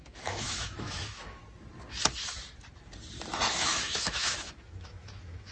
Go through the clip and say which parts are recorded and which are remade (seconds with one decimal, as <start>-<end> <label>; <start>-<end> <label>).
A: 0.0-1.4 remade; 1.4-3.5 recorded; 3.5-5.5 remade